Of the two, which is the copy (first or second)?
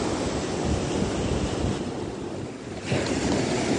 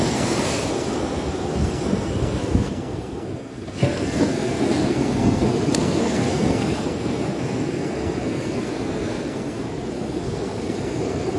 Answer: second